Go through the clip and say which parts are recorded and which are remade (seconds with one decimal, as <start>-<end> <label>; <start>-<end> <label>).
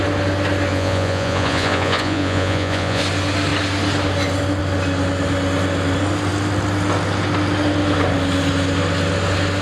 0.0-0.7 recorded; 0.7-3.0 remade; 3.0-9.6 recorded